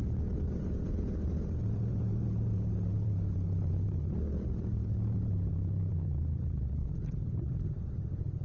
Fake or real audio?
fake